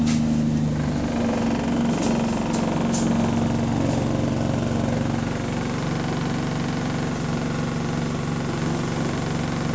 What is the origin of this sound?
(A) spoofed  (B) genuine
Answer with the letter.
B